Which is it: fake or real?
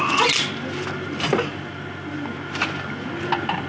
real